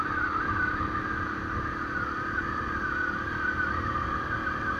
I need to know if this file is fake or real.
real